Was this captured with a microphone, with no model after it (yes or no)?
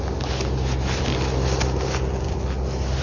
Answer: yes